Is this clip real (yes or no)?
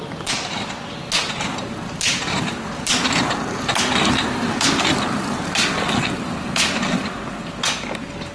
yes